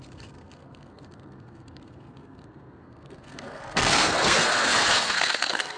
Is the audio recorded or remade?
remade